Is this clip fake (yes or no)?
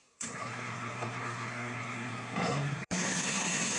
yes